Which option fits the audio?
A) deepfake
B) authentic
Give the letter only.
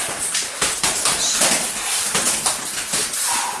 A